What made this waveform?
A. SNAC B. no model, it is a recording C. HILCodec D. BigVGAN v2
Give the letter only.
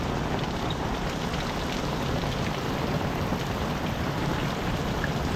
D